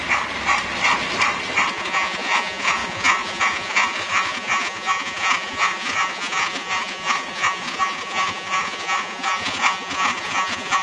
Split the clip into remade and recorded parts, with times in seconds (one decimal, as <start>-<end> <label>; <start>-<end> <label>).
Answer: 0.0-1.7 recorded; 1.7-10.8 remade